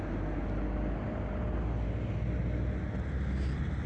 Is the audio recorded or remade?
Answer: recorded